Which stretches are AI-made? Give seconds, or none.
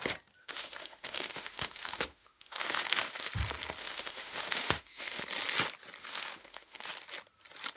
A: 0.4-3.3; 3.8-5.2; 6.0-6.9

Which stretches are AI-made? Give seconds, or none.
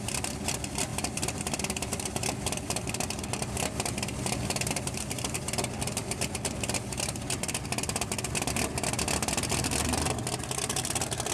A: none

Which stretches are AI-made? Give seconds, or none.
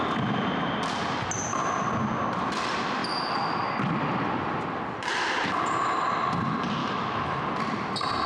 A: 6.8-7.4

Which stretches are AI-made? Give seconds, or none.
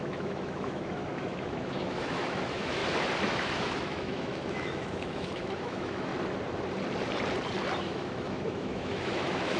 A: 0.0-2.8; 3.3-6.1; 7.8-9.6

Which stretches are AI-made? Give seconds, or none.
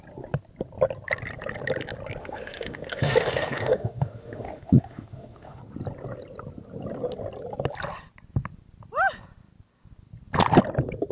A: 2.2-5.6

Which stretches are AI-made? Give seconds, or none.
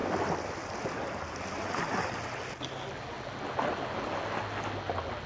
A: none